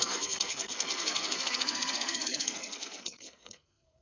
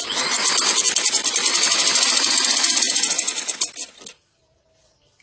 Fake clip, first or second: first